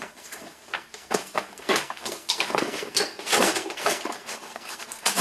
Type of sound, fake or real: fake